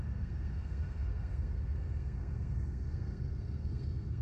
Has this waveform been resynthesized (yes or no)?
yes